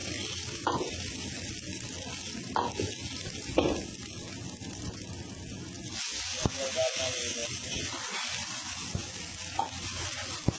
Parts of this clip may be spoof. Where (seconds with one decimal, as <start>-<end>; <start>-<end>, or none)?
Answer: none